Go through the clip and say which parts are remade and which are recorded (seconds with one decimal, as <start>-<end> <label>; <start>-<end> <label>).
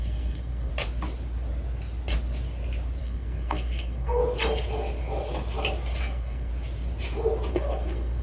0.0-0.7 remade; 0.7-3.0 recorded; 3.0-4.2 remade; 4.2-6.0 recorded; 6.0-6.5 remade; 6.5-7.5 recorded; 7.5-8.2 remade